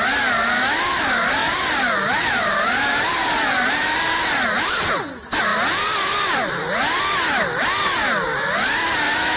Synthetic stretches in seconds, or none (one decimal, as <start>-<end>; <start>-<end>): 1.4-4.3